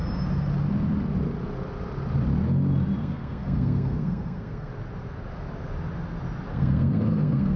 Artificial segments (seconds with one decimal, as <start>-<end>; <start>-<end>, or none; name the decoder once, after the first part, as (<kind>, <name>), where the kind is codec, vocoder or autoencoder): 3.0-4.7 (codec, SNAC); 6.5-7.6